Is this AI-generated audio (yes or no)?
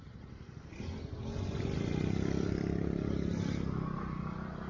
no